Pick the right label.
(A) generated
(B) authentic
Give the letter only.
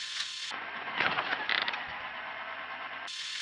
A